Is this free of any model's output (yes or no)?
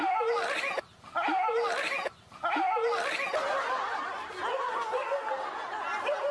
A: yes